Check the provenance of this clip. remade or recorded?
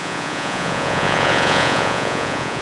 remade